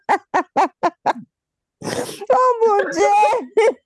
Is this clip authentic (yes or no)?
yes